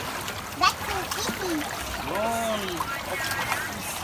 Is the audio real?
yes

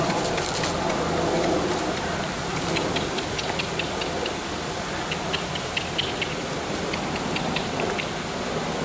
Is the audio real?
yes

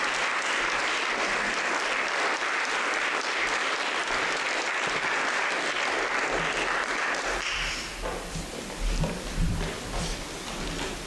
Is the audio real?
no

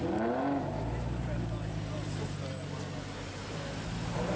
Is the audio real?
yes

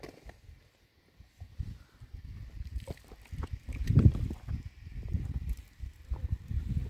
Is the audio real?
yes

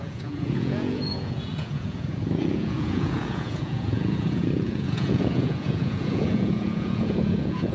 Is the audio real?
no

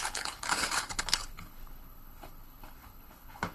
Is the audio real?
no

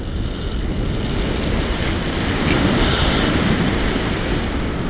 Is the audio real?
yes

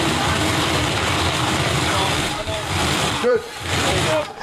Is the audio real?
no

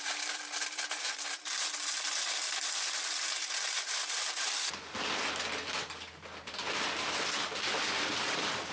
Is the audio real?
no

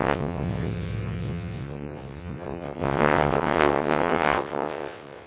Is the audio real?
no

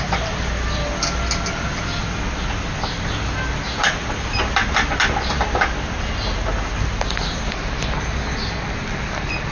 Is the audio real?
yes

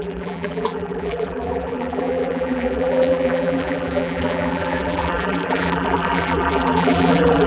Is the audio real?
no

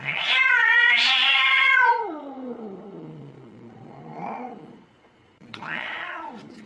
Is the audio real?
no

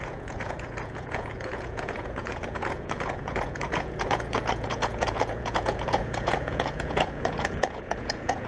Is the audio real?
no